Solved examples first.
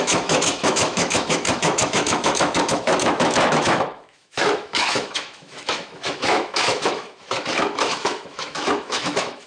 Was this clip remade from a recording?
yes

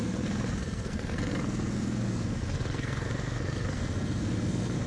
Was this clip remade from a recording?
yes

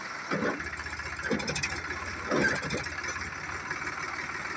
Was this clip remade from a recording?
no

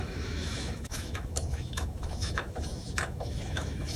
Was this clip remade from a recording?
yes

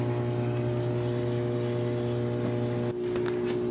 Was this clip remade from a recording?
no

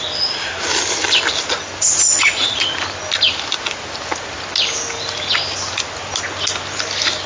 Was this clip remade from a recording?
no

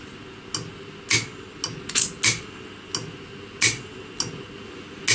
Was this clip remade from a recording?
no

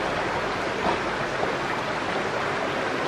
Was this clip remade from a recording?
no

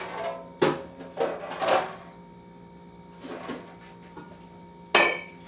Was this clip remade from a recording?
no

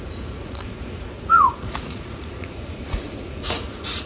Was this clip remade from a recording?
yes